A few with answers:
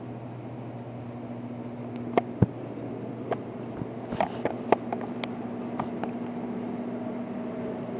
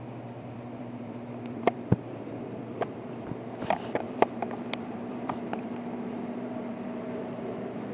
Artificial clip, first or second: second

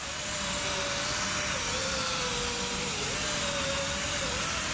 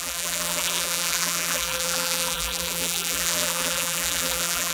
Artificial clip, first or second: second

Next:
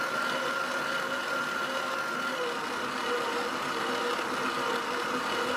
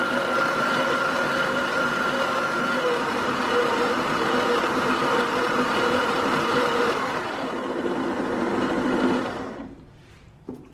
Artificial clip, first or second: second